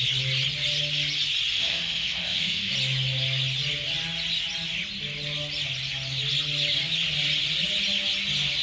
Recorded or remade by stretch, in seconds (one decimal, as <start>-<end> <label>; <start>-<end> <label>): 0.0-1.5 recorded; 1.5-2.7 remade; 2.7-8.6 recorded